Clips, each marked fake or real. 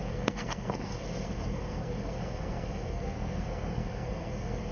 fake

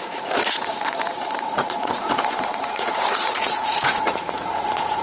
fake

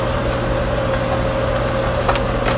real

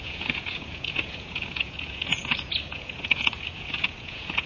fake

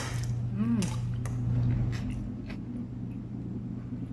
real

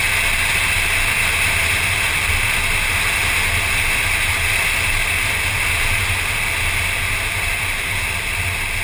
real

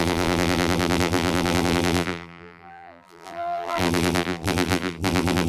fake